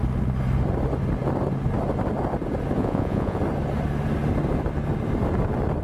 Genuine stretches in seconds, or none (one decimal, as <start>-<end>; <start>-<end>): 0.0-2.8; 3.4-5.8